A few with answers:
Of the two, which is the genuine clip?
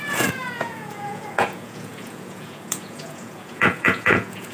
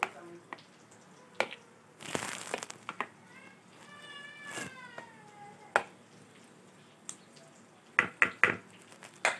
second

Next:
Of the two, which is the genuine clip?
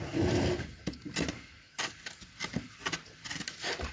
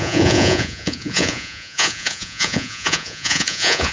first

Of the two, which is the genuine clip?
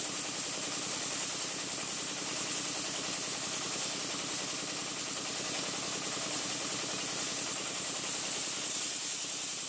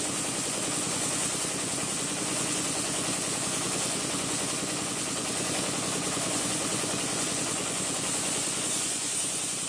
first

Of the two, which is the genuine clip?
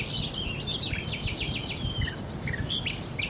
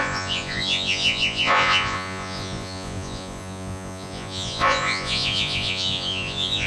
first